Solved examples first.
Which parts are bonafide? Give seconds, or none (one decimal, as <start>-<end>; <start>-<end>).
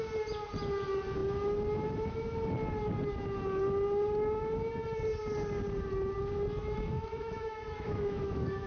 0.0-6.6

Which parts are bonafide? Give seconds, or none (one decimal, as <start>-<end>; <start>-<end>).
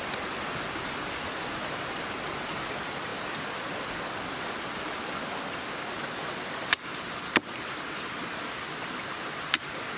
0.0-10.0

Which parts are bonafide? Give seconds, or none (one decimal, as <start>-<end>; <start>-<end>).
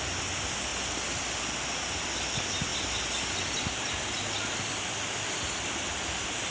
0.0-6.5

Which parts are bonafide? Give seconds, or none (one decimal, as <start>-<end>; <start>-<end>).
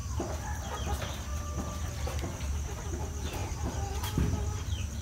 0.0-1.3; 1.8-3.4; 4.1-5.0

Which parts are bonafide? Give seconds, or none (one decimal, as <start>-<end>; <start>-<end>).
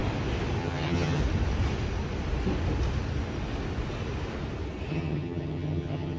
0.0-0.6; 1.2-4.9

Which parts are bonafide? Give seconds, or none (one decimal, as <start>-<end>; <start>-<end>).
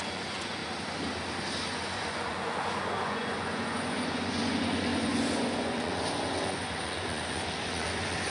0.6-1.7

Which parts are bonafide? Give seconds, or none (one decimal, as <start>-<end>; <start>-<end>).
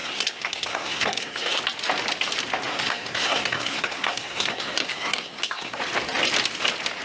1.6-2.7; 5.8-7.0